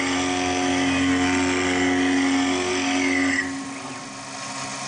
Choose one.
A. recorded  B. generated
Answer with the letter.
A